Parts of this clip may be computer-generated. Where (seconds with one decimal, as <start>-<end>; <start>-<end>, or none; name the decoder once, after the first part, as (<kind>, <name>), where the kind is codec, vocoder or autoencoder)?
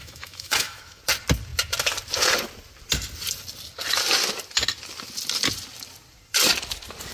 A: 0.0-1.0 (autoencoder, DAC-VAE)